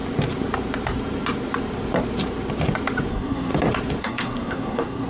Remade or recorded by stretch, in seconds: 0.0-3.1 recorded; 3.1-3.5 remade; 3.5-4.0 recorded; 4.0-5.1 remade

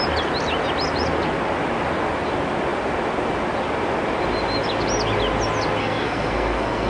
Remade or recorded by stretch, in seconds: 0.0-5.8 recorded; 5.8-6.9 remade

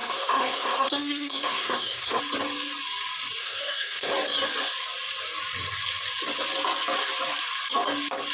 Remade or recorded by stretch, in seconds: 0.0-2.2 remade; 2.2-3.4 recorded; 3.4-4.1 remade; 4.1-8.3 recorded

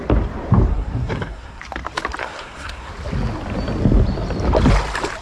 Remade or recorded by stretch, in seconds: 0.0-0.7 recorded; 0.7-1.6 remade; 1.6-2.2 recorded; 2.2-2.9 remade; 2.9-5.2 recorded

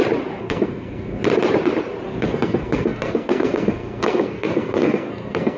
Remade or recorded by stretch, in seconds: 0.0-0.4 recorded; 0.4-1.2 remade; 1.2-2.1 recorded; 2.1-5.6 remade

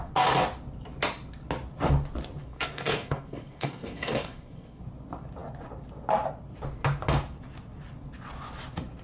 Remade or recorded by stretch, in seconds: 0.0-2.4 recorded; 2.4-4.8 remade; 4.8-9.0 recorded

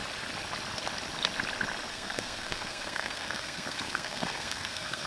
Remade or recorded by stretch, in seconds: 0.0-1.9 recorded; 1.9-5.1 remade